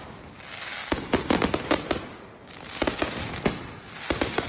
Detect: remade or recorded recorded